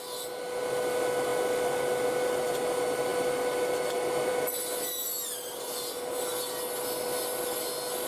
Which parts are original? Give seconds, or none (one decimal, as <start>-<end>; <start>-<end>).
0.0-8.1